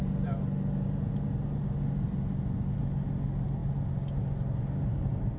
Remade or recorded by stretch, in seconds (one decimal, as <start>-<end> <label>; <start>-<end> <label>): 0.0-5.4 recorded